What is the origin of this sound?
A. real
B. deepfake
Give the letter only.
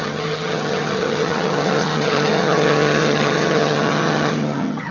B